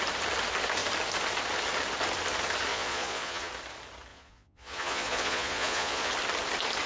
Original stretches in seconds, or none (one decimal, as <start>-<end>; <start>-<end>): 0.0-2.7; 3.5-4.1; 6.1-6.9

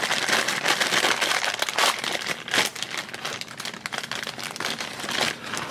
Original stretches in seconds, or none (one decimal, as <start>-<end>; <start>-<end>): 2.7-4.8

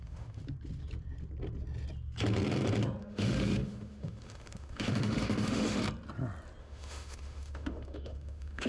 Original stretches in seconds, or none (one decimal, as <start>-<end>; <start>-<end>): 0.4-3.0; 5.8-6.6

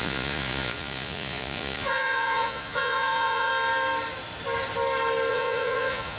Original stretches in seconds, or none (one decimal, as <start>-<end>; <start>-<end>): 3.5-5.3